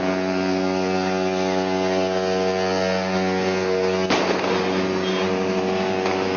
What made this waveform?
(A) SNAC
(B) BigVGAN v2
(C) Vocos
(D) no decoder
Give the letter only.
D